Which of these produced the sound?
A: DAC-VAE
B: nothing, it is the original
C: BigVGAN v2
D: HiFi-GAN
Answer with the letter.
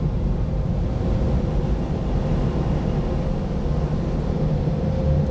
B